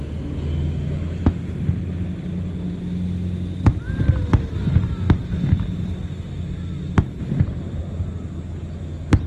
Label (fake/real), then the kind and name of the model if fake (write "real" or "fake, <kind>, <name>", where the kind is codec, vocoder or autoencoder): real